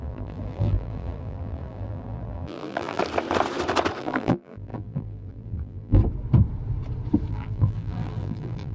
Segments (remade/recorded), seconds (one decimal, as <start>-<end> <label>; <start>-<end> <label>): 0.0-3.0 remade; 3.0-4.0 recorded; 4.0-6.0 remade; 6.0-7.3 recorded; 7.3-8.7 remade